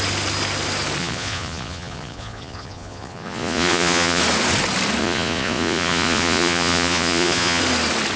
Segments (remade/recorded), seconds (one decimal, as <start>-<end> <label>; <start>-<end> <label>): 0.0-1.0 recorded; 1.0-4.2 remade; 4.2-5.0 recorded; 5.0-7.6 remade; 7.6-8.2 recorded